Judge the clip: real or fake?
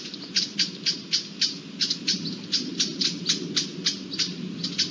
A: real